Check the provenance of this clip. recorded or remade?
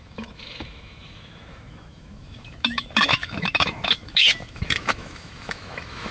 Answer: remade